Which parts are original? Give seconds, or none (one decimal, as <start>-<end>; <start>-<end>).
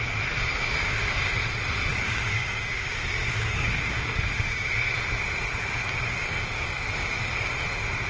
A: 0.0-0.5; 1.3-1.9; 4.7-6.2; 7.5-8.1